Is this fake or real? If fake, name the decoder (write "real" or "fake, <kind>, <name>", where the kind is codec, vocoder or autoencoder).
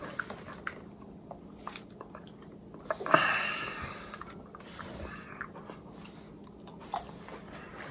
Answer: real